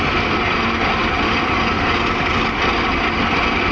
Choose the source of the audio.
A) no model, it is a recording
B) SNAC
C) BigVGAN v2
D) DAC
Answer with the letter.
A